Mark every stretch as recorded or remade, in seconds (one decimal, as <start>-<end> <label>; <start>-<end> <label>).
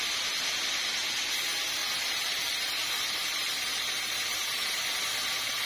0.0-1.8 recorded; 1.8-5.0 remade; 5.0-5.7 recorded